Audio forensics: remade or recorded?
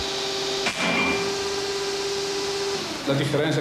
recorded